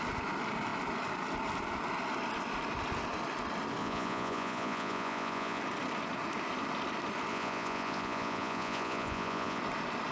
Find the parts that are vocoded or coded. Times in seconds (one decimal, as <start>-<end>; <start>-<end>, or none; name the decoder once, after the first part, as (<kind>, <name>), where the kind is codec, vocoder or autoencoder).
3.8-5.6 (vocoder, Vocos); 7.3-9.6